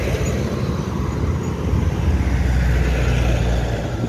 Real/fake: real